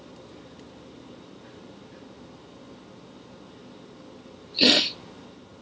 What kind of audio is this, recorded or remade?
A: recorded